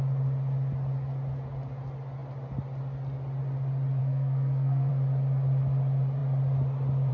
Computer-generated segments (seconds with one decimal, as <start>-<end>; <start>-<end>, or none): 4.0-4.9